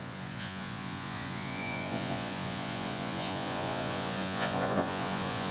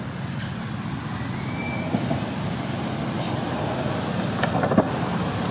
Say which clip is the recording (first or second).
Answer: second